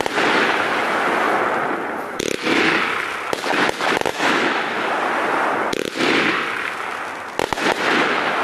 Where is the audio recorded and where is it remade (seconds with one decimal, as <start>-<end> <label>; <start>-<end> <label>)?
0.0-4.1 recorded; 4.1-4.9 remade; 4.9-8.4 recorded